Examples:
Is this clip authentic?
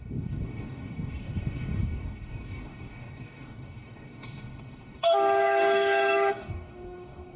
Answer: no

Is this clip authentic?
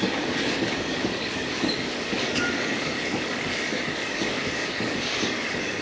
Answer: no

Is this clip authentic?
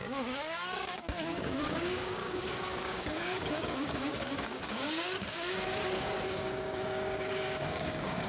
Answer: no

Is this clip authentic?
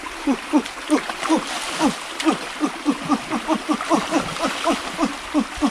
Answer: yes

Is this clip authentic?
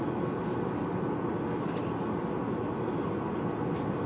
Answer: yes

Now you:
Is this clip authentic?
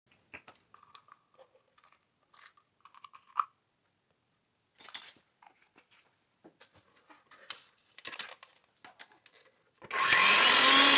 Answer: yes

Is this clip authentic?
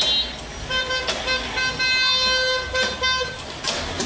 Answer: yes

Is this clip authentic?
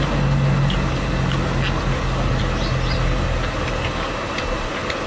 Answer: yes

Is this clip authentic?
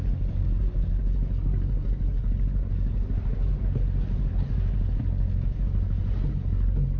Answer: yes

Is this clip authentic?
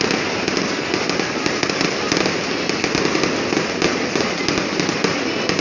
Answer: yes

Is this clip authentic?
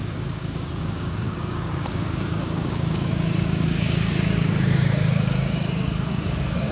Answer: no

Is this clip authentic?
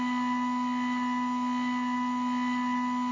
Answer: yes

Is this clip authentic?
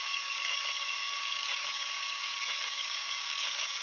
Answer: no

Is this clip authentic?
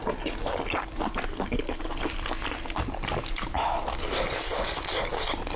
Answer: yes